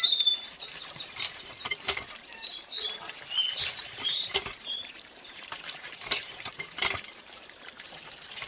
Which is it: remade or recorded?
remade